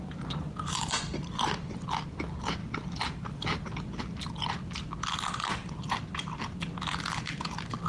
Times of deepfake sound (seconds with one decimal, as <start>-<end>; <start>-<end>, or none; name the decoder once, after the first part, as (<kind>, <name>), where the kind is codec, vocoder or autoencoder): 0.0-2.6 (vocoder, BigVGAN v2); 4.0-7.9

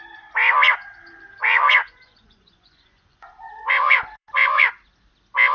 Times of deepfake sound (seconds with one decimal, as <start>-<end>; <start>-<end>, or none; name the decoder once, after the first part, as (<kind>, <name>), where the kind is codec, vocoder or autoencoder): 1.4-4.7 (vocoder, Vocos)

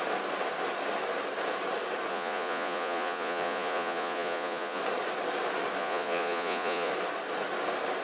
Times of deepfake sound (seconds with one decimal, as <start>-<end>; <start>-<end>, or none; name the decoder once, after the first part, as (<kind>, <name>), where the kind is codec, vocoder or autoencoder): 2.1-4.8 (vocoder, Vocos); 5.8-6.9